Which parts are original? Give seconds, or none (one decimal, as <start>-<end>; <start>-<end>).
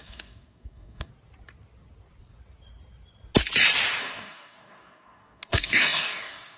1.1-4.0